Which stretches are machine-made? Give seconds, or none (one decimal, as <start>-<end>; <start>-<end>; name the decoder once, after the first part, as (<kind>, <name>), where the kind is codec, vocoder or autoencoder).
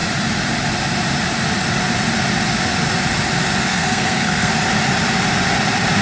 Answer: 3.7-4.5 (codec, SNAC)